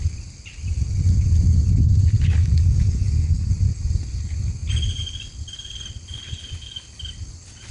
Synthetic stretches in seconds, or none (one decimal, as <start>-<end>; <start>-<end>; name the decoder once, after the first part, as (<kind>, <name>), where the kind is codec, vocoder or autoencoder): 2.4-3.5 (codec, DAC)